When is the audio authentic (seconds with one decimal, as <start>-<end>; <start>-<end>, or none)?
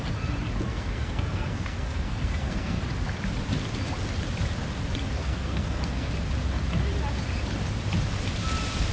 0.0-0.7; 2.8-5.2; 6.1-8.9